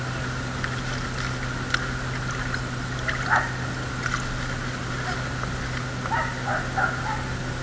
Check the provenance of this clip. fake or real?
real